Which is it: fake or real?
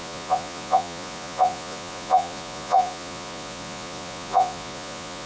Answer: fake